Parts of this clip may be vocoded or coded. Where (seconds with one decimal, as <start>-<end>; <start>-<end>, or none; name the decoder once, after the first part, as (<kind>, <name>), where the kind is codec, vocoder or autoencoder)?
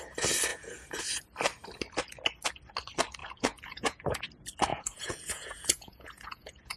0.5-1.0 (vocoder, Vocos); 3.2-4.2; 4.7-6.8